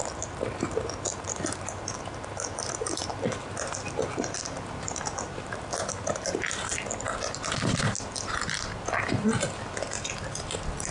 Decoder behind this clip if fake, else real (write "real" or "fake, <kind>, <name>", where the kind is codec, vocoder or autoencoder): real